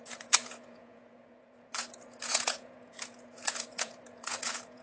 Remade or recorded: remade